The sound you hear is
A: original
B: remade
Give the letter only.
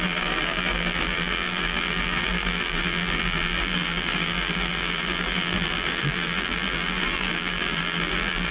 B